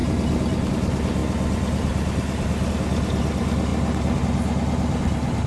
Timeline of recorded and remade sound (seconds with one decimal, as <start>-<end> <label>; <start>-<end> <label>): 0.0-5.5 recorded